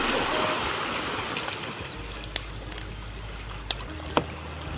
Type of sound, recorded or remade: recorded